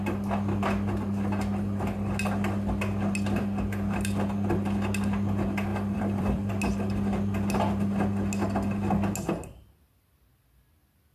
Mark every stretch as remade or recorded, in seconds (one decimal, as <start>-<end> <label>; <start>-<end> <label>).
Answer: 0.0-5.7 recorded; 5.7-6.5 remade; 6.5-11.1 recorded